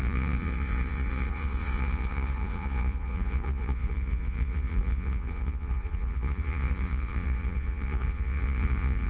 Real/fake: fake